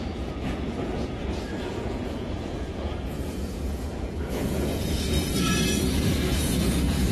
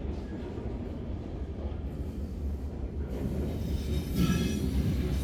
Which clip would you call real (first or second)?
second